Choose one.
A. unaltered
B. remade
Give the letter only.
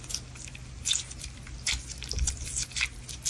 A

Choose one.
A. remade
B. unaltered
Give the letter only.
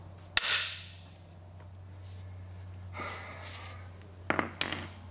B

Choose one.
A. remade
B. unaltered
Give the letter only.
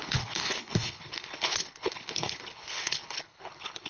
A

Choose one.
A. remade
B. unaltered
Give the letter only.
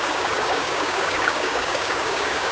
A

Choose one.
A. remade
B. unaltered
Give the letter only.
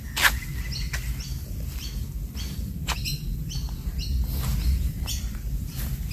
B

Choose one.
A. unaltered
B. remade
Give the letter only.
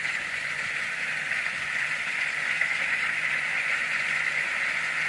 B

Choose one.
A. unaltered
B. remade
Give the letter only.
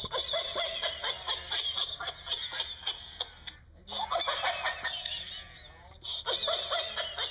A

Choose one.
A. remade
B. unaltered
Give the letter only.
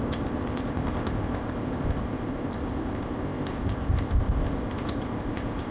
A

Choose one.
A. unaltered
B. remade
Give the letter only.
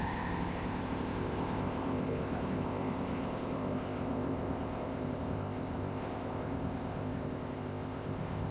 B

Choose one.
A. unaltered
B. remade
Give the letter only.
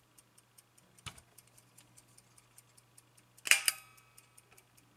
A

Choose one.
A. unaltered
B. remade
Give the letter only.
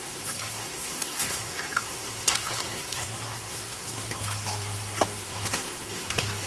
B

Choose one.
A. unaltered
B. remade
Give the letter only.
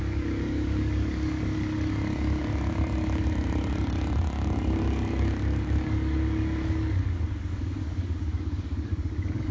B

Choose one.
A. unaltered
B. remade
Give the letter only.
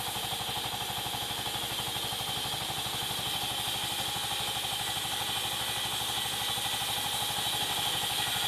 A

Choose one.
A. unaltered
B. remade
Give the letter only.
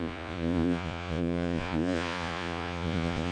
B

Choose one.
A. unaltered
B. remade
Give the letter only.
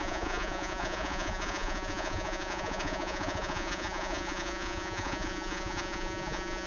B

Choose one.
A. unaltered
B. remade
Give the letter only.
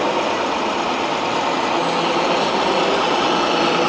A